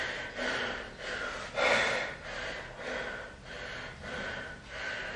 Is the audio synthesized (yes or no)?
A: no